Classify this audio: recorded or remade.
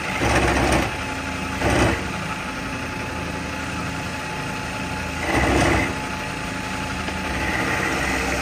recorded